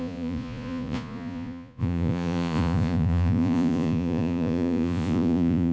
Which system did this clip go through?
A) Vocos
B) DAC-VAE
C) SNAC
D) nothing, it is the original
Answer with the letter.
A